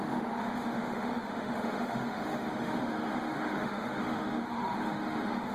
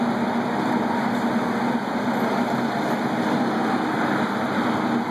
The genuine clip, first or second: second